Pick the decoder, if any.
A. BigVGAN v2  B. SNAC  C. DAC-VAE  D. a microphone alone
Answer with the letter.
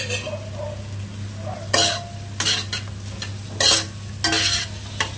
D